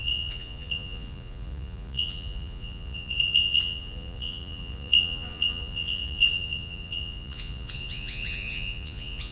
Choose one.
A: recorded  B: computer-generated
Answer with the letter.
B